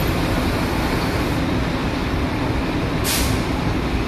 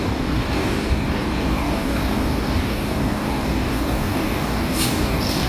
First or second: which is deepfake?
second